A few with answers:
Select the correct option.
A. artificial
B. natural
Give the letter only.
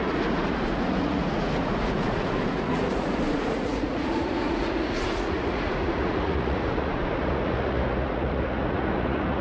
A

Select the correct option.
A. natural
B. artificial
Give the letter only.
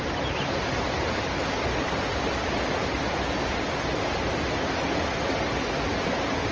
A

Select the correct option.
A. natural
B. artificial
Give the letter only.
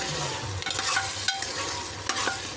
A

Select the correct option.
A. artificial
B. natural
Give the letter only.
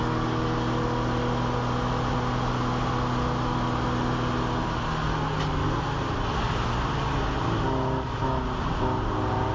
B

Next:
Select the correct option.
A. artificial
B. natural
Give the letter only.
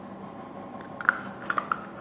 B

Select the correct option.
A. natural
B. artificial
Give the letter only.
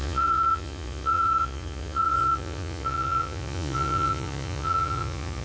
B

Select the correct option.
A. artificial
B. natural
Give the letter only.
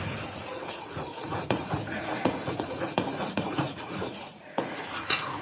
A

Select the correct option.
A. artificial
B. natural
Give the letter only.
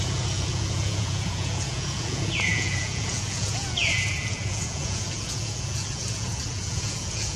A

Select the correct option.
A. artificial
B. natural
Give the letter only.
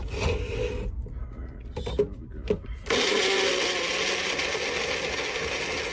B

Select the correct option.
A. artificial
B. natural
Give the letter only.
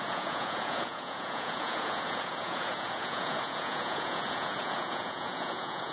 A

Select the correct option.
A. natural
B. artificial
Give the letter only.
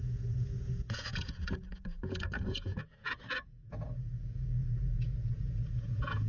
B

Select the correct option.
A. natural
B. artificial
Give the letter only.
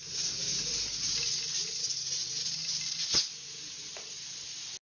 A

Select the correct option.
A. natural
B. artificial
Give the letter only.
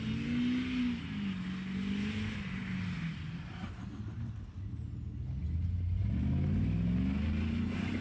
A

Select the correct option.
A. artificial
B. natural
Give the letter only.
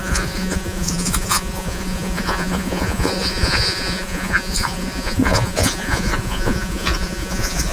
A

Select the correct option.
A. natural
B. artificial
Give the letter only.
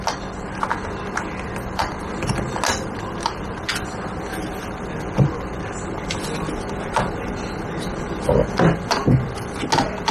A